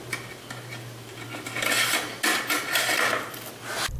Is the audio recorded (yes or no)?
yes